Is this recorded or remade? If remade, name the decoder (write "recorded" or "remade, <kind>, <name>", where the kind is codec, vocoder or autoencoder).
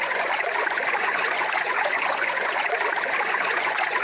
remade, vocoder, Vocos